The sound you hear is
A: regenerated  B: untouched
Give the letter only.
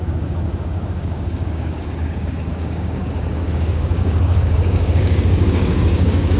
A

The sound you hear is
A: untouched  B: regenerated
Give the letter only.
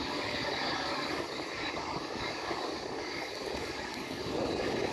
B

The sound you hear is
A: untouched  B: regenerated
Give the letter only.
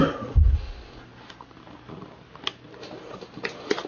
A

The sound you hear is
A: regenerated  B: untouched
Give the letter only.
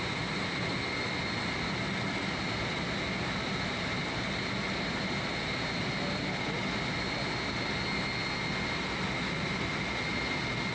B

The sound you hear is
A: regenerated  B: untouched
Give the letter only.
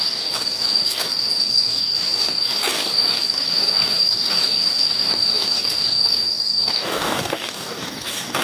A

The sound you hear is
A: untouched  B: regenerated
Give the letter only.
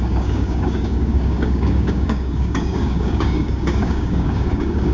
B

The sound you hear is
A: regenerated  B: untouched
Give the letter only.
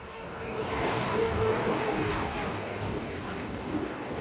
A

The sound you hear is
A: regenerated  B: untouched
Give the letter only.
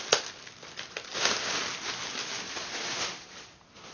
B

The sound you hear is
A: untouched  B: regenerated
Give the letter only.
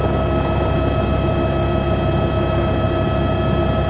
A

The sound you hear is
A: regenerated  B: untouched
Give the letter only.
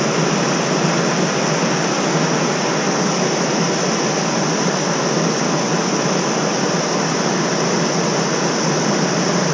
B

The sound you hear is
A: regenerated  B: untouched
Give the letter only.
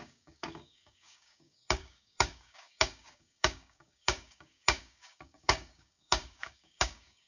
A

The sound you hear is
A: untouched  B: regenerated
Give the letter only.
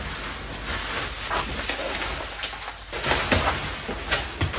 A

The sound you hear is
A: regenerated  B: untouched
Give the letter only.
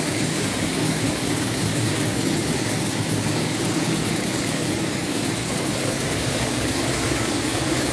A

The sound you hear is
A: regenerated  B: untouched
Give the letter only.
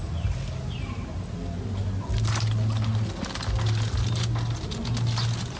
B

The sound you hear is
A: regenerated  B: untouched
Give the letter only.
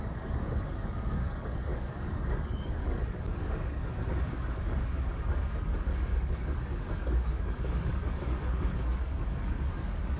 A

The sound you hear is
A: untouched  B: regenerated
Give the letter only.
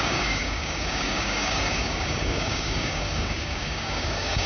B